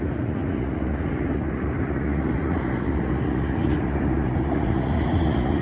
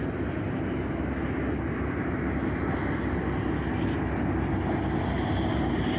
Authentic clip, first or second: second